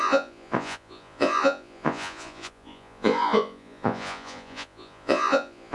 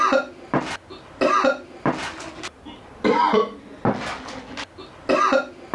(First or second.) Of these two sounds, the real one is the second